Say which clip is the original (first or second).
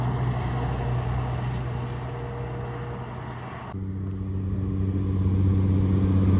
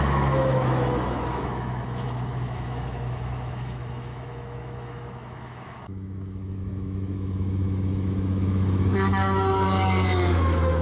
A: first